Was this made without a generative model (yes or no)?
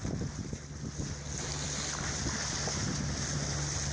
yes